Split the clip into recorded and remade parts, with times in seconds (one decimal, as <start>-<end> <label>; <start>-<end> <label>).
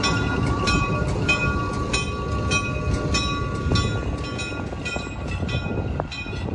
0.0-1.4 remade; 1.4-4.8 recorded; 4.8-6.5 remade